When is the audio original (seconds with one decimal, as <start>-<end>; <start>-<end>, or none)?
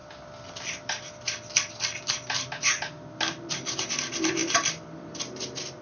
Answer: 0.0-3.5